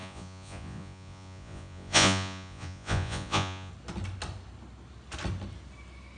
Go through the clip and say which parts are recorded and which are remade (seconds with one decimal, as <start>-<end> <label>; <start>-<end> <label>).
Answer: 0.0-3.7 remade; 3.7-6.2 recorded